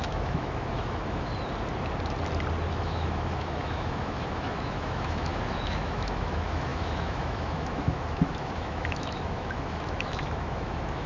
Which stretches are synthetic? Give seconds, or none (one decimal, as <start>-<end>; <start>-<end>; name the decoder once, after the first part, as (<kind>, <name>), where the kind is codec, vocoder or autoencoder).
0.0-1.3 (autoencoder, DAC-VAE); 2.7-11.1

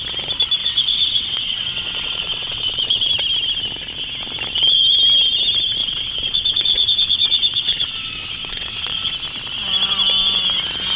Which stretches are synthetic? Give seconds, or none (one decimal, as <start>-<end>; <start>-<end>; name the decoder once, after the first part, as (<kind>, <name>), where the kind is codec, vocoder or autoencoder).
0.6-3.1 (vocoder, WaveNeXt); 5.8-9.1

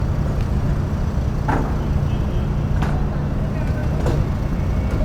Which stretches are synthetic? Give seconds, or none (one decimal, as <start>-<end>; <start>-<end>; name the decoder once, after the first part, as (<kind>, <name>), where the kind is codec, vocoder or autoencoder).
none

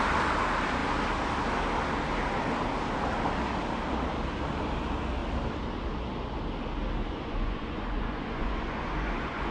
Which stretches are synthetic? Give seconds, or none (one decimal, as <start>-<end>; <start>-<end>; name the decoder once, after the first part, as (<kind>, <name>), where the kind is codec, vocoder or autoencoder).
7.0-9.5 (vocoder, Vocos)

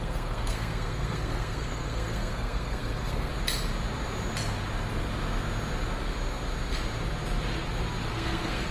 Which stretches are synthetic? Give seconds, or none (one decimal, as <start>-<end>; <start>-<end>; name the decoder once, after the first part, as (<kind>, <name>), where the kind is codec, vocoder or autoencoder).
0.0-3.3 (codec, SNAC); 8.1-8.7

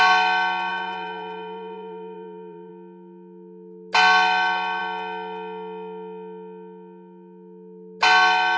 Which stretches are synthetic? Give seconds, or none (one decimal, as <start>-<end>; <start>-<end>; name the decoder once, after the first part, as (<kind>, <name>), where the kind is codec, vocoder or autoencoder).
0.7-2.7 (vocoder, BigVGAN v2)

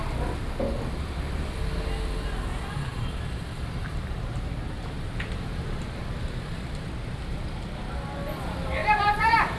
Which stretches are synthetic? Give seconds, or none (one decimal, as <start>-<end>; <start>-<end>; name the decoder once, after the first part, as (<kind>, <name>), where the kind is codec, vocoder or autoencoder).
2.9-7.8 (vocoder, BigVGAN v2); 8.8-9.6

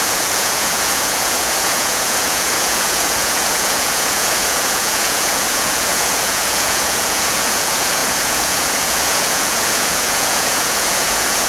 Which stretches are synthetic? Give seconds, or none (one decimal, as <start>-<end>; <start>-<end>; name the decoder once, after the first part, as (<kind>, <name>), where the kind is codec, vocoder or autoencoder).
0.0-11.5 (vocoder, Vocos)